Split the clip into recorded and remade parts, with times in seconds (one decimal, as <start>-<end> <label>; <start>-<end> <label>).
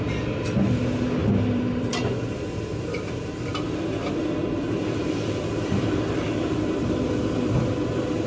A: 0.0-1.2 recorded; 1.2-3.5 remade; 3.5-4.4 recorded; 4.4-5.4 remade; 5.4-8.3 recorded